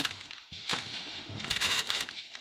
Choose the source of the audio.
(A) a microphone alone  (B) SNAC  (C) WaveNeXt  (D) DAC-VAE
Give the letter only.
D